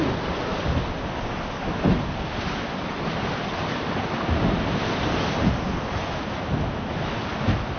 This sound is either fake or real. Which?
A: real